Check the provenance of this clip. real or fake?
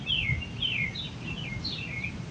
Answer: real